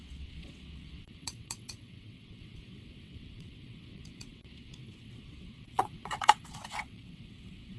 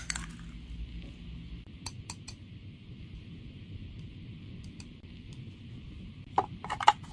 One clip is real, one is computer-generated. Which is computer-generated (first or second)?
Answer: first